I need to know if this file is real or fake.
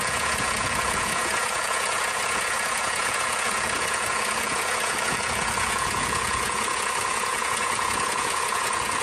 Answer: fake